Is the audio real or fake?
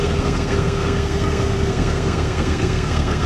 fake